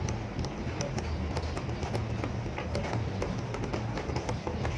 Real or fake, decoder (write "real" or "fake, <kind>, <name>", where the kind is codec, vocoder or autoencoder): real